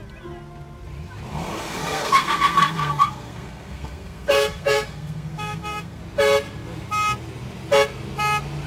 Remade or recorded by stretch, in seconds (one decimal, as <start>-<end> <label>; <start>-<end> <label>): 0.0-1.3 recorded; 1.3-6.0 remade; 6.0-8.7 recorded